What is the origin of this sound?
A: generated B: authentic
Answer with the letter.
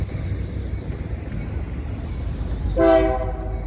B